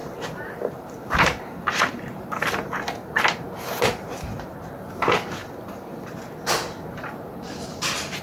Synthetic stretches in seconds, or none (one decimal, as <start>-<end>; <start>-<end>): 0.0-5.4; 6.9-8.2